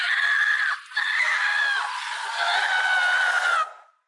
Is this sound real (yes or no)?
yes